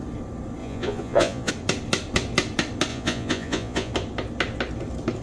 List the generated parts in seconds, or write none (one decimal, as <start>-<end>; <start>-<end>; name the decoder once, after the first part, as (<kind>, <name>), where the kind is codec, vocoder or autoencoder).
0.6-1.5 (vocoder, Vocos); 2.9-3.9